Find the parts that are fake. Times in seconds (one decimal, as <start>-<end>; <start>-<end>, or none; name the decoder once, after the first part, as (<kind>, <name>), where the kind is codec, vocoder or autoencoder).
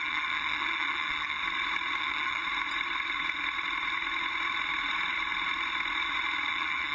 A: 0.0-1.4 (vocoder, HiFi-GAN); 2.0-2.4; 6.5-6.9